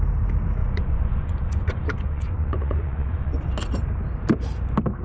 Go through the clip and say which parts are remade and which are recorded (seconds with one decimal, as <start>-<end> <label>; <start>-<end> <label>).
0.0-0.6 recorded; 0.6-3.5 remade; 3.5-5.0 recorded